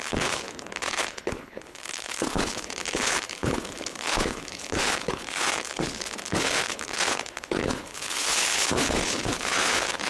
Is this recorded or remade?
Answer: remade